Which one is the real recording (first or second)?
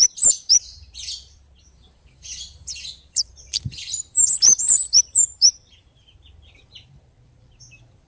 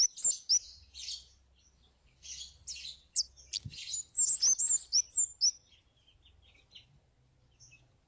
second